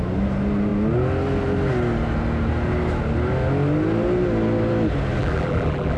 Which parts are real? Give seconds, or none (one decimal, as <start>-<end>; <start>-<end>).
0.0-5.2

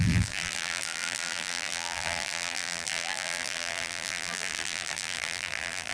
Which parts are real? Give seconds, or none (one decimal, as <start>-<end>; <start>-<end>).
none

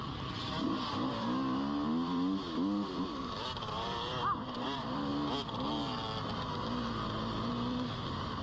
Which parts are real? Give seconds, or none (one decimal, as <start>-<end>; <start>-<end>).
5.1-7.5

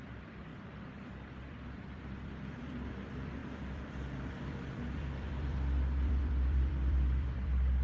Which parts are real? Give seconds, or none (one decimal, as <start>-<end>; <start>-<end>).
none

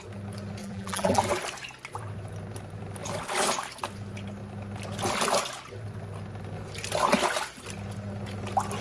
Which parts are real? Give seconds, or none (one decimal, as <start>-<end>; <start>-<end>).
0.0-0.6; 1.2-8.8

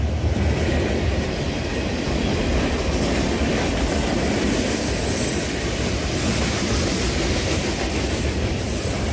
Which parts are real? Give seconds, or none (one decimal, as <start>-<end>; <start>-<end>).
none

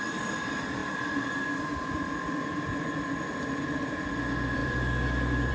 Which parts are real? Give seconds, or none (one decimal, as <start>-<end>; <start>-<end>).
none